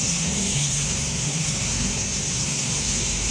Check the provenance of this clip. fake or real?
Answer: fake